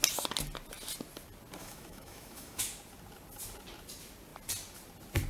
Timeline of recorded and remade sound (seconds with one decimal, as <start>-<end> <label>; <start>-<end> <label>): 0.0-1.6 recorded; 1.6-2.6 remade; 2.6-5.3 recorded